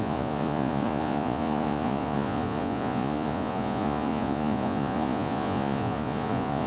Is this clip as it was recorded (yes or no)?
no